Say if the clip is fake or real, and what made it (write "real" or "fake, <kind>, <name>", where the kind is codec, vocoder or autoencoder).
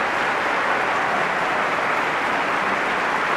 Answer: real